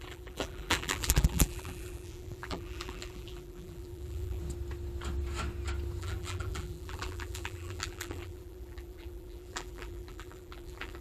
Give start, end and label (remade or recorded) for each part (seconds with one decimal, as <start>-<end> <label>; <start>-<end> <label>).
0.0-4.4 remade; 4.4-6.0 recorded; 6.0-11.0 remade